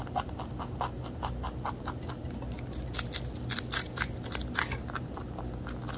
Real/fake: real